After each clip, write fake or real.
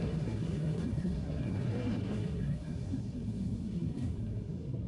fake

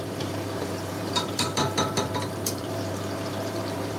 fake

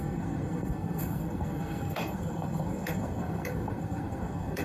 fake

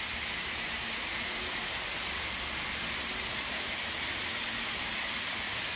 real